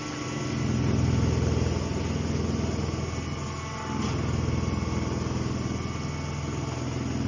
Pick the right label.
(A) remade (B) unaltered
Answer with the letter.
B